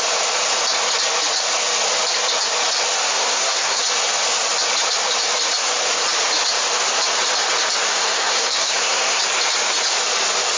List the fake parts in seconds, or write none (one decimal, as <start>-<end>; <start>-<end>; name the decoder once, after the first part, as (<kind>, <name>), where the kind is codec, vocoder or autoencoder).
3.1-3.8 (codec, SNAC); 7.9-9.2